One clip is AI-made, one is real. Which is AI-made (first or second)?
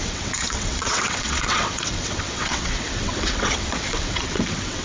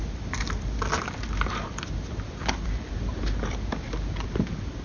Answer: first